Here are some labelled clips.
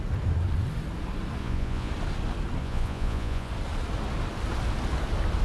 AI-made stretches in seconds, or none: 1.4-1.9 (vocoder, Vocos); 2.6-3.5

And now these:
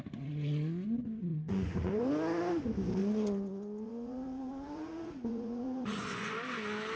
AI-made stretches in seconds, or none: 1.3-2.1 (vocoder, Vocos); 3.0-6.3